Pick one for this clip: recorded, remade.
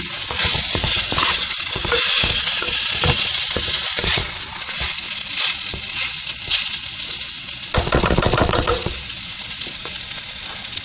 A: remade